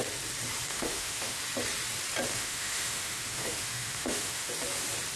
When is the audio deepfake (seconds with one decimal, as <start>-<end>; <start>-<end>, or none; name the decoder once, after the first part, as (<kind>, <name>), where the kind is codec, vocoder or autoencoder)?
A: 0.7-1.4 (autoencoder, DAC-VAE); 2.3-4.5